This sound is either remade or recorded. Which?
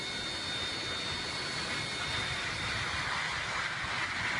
recorded